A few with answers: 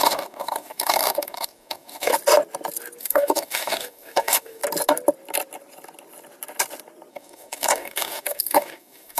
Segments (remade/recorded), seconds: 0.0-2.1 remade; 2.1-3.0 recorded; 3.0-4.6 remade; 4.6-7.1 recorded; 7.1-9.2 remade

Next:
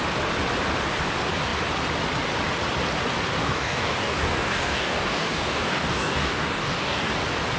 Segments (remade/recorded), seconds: 0.0-3.4 recorded; 3.4-7.1 remade; 7.1-7.6 recorded

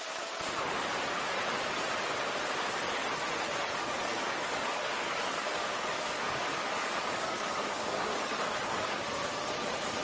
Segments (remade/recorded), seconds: 0.0-4.1 recorded; 4.1-9.0 remade; 9.0-10.0 recorded

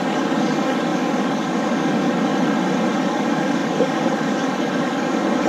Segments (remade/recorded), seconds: 0.0-2.3 remade; 2.3-3.1 recorded; 3.1-5.5 remade